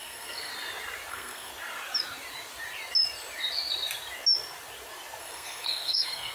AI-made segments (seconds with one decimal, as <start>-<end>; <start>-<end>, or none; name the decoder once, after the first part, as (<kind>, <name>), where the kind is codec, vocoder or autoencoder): 0.0-0.5 (codec, SNAC); 1.1-1.5; 5.2-6.3